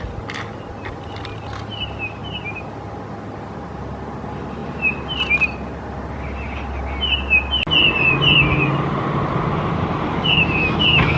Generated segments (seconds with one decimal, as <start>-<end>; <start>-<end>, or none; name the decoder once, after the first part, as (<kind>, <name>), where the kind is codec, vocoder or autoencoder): 10.1-11.2 (autoencoder, DAC-VAE)